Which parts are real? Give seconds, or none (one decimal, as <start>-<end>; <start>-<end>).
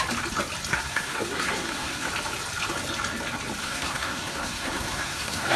0.0-0.7; 2.1-3.6